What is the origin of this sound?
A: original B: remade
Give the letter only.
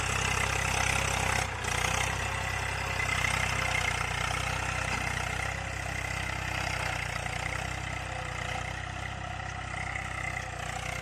A